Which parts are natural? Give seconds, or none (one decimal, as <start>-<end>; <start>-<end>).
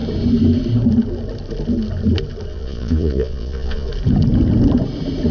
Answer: 0.0-2.5; 3.9-5.3